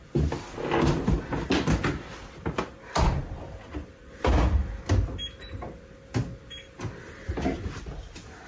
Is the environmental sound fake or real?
real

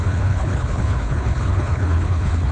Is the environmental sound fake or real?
fake